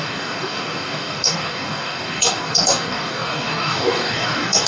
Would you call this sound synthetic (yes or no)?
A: yes